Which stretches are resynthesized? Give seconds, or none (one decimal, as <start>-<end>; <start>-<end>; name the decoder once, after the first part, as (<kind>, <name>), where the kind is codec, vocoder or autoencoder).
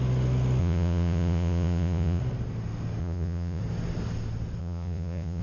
0.6-2.2 (vocoder, Vocos); 3.0-3.6; 4.6-5.4